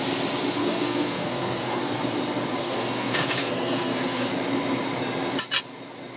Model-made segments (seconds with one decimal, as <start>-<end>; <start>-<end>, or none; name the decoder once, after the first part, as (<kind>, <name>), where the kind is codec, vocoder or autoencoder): 0.6-1.8 (codec, SNAC); 2.6-4.3